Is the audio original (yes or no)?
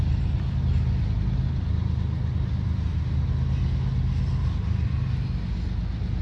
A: yes